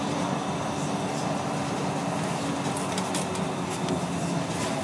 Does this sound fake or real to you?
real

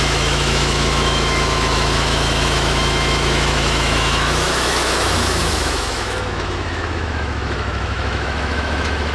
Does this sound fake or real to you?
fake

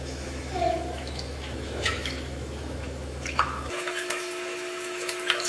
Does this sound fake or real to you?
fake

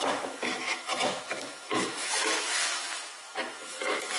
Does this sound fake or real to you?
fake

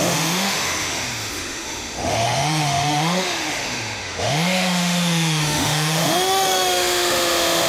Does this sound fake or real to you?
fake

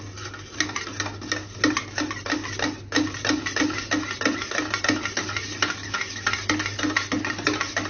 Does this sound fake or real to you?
real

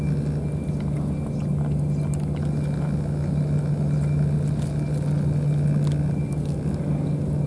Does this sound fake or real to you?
real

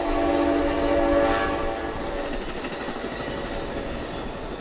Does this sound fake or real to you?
real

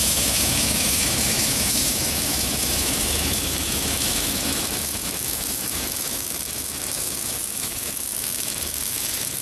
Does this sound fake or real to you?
fake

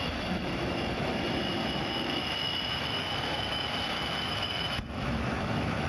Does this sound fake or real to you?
fake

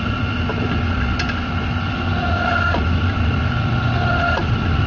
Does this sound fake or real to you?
real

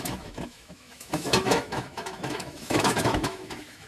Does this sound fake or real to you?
fake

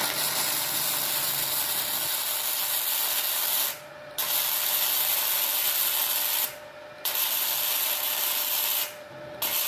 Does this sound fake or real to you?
real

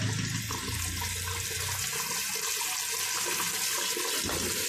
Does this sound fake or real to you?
real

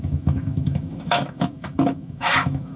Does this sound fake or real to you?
fake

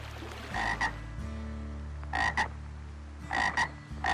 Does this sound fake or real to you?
real